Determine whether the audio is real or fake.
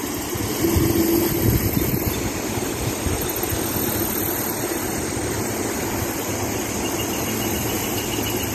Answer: real